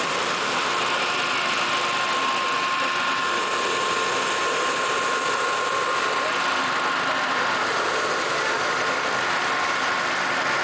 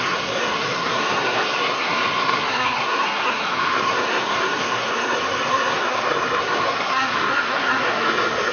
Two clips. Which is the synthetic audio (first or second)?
second